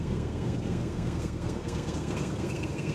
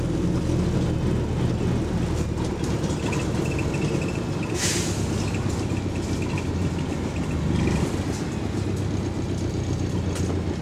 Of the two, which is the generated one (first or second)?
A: first